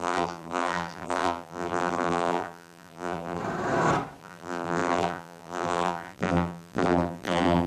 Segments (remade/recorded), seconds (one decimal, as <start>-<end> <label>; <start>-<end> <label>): 0.0-3.4 remade; 3.4-4.2 recorded; 4.2-7.7 remade